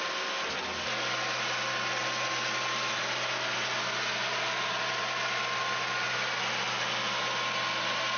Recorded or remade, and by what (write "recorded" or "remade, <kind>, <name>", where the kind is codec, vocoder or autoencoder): recorded